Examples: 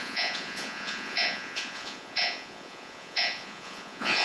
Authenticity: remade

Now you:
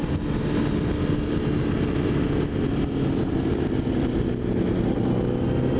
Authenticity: recorded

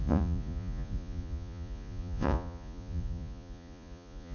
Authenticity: remade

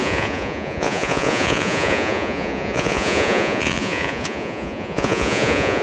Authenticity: remade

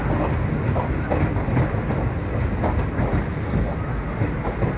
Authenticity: recorded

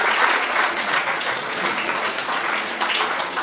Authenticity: remade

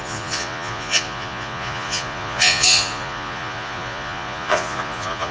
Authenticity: remade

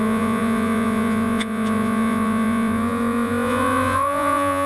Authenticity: remade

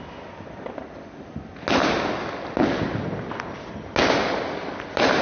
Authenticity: recorded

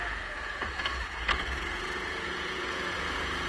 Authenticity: remade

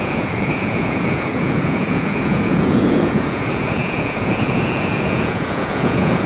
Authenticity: remade